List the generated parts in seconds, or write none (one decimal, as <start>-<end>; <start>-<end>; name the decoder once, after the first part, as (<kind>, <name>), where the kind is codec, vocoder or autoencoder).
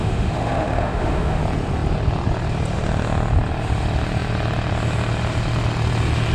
0.0-1.4 (autoencoder, DAC-VAE)